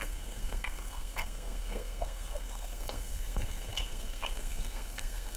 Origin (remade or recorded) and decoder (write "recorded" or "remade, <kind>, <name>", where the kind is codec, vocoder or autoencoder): remade, codec, SNAC